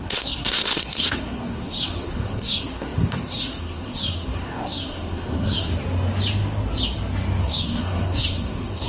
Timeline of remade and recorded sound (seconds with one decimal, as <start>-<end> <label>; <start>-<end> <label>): 0.0-5.7 remade; 5.7-7.4 recorded; 7.4-8.9 remade